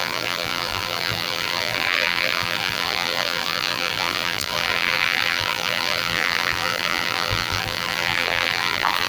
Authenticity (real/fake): fake